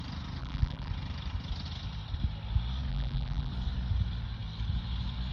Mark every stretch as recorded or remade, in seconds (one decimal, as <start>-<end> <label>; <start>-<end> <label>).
0.0-0.4 recorded; 0.4-0.9 remade; 0.9-2.9 recorded; 2.9-3.5 remade; 3.5-5.3 recorded